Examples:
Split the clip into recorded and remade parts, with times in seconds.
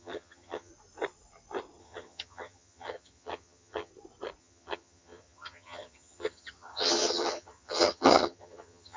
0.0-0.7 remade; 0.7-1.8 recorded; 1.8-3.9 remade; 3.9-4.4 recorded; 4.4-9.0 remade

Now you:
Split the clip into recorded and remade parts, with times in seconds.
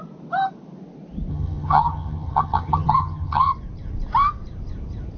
0.0-1.3 recorded; 1.3-3.5 remade; 3.5-5.2 recorded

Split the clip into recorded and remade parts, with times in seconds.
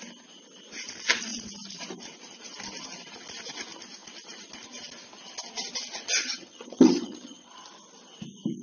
0.0-6.2 recorded; 6.2-7.5 remade; 7.5-8.6 recorded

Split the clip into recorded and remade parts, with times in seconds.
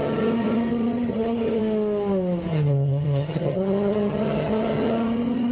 0.0-1.6 remade; 1.6-2.5 recorded; 2.5-5.5 remade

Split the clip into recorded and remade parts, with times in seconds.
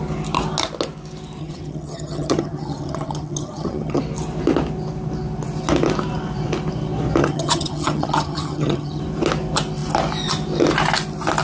0.0-1.4 recorded; 1.4-4.0 remade; 4.0-7.2 recorded; 7.2-9.0 remade; 9.0-11.4 recorded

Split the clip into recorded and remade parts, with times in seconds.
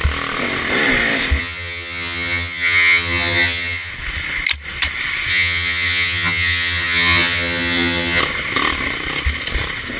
0.0-1.4 recorded; 1.4-3.9 remade; 3.9-5.3 recorded; 5.3-8.2 remade; 8.2-10.0 recorded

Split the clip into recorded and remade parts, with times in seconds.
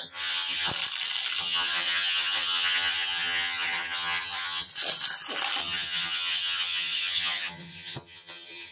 0.0-0.7 remade; 0.7-1.4 recorded; 1.4-4.7 remade; 4.7-5.6 recorded; 5.6-8.7 remade